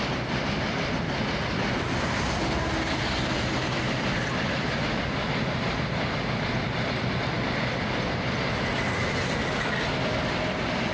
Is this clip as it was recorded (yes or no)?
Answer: yes